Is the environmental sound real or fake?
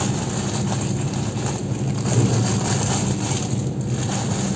real